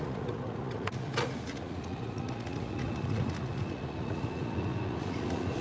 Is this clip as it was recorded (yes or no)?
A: no